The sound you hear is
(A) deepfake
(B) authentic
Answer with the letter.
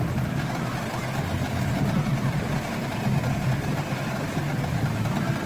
B